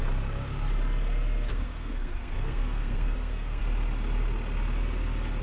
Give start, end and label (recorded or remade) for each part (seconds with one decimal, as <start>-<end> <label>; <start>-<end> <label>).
0.0-1.5 recorded; 1.5-3.6 remade; 3.6-5.4 recorded